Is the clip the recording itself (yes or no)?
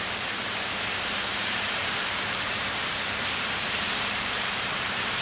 no